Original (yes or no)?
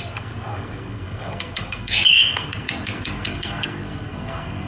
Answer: no